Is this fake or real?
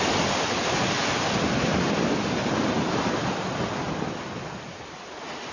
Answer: real